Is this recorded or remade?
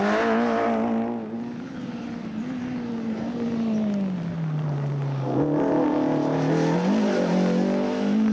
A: recorded